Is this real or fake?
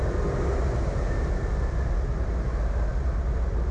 real